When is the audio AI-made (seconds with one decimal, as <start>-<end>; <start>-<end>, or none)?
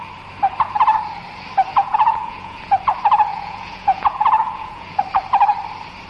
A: 1.7-2.8; 3.3-5.0